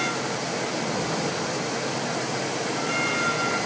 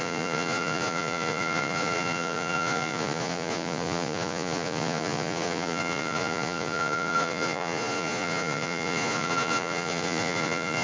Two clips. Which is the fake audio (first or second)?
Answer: second